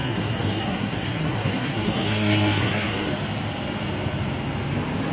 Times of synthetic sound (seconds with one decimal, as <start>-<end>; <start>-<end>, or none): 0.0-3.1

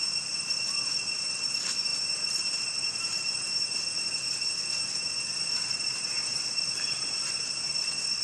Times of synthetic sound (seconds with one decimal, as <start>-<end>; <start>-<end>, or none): 0.0-8.2

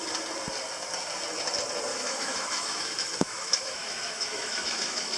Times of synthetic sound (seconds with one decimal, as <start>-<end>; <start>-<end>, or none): 1.9-5.2

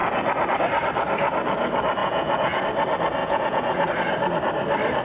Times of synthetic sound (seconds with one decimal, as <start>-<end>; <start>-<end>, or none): 2.0-2.6; 3.2-3.9

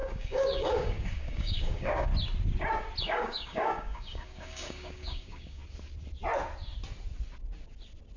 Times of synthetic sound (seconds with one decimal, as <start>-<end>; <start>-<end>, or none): 0.0-2.1; 3.0-5.6

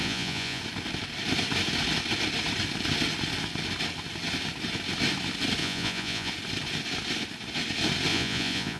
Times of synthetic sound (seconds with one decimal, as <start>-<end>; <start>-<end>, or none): 0.0-0.6; 5.6-6.3; 8.1-8.8

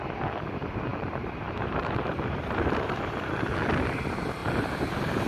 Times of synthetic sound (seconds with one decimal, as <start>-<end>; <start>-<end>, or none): 0.9-3.3; 4.4-5.3

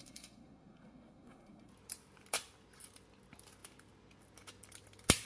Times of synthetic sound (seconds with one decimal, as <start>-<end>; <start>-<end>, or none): 0.0-1.7